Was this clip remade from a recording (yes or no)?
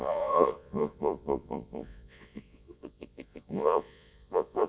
yes